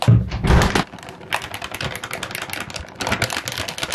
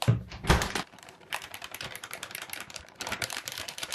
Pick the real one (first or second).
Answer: first